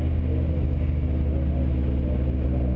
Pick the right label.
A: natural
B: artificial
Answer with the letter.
A